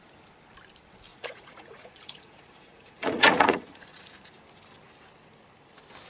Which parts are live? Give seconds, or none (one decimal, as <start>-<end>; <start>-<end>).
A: 0.0-1.1; 4.3-6.1